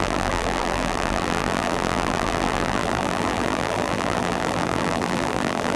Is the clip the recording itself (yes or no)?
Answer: no